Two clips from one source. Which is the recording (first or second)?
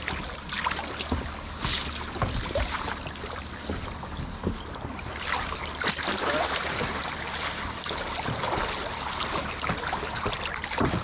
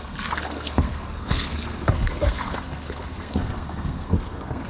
first